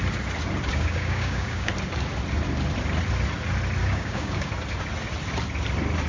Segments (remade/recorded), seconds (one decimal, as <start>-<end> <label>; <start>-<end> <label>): 0.0-0.7 recorded; 0.7-1.7 remade; 1.7-3.8 recorded; 3.8-4.5 remade; 4.5-6.1 recorded